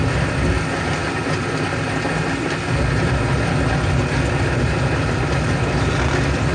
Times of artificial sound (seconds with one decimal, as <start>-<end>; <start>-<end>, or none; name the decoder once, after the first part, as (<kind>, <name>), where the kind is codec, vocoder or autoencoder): none